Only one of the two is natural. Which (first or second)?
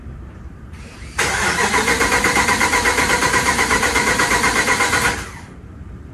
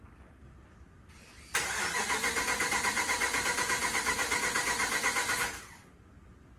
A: second